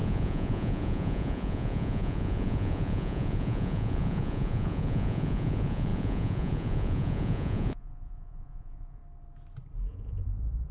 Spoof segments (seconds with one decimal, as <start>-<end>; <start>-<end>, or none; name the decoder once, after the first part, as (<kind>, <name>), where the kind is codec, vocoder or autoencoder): 0.0-9.0 (vocoder, Vocos); 9.9-10.7